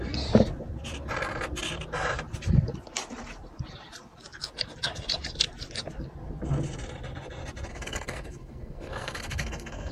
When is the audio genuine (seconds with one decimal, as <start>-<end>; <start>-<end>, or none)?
0.0-7.7